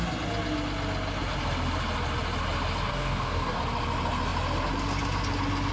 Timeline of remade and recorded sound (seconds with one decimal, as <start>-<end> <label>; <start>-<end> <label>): 0.0-2.9 recorded; 2.9-3.6 remade; 3.6-5.7 recorded